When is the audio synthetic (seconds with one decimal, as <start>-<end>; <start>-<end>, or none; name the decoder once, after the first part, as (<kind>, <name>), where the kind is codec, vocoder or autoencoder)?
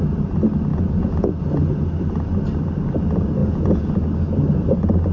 0.7-1.4 (vocoder, Vocos); 3.4-3.9